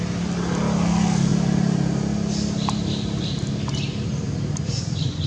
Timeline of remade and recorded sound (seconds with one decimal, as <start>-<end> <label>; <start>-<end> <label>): 0.0-5.3 recorded

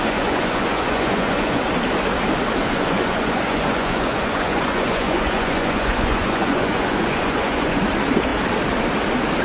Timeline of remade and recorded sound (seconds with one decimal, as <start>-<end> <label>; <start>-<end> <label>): 0.0-1.6 remade; 1.6-2.6 recorded; 2.6-7.8 remade; 7.8-9.4 recorded